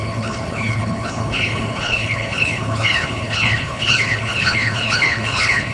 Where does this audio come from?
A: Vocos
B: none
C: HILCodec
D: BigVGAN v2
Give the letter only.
C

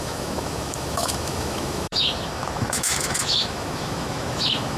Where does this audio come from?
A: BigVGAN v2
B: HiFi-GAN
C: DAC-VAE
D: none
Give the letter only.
C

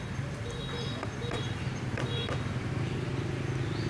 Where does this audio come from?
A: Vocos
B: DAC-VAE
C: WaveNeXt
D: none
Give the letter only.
D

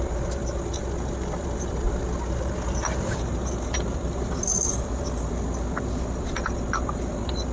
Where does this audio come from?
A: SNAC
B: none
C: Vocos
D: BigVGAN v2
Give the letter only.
B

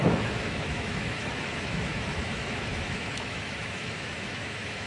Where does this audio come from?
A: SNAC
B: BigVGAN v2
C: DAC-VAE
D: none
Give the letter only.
C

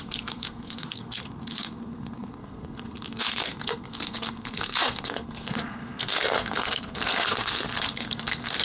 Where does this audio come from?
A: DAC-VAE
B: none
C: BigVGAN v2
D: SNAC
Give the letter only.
D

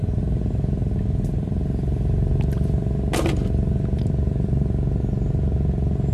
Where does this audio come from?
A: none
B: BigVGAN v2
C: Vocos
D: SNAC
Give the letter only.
A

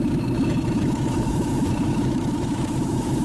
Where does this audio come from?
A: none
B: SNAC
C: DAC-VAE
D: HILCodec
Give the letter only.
C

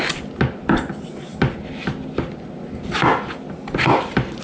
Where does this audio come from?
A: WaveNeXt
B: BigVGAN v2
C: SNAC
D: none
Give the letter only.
D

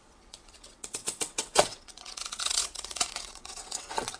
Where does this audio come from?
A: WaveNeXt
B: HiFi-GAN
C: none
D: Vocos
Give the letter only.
A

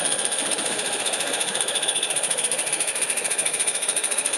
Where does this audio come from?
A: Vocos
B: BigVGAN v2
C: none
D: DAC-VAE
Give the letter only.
D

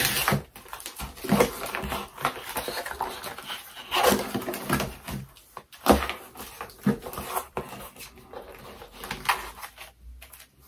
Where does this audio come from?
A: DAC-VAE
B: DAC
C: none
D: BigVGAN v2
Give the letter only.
C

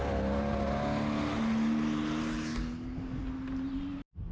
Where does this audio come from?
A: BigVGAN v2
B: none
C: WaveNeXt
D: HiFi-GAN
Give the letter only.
B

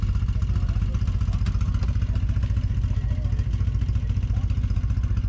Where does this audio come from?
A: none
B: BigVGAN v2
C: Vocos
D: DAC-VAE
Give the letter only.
A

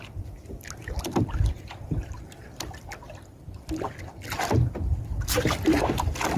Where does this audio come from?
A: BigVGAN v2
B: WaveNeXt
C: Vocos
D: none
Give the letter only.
D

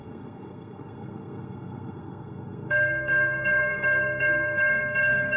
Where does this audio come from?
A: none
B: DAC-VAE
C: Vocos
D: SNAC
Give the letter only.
D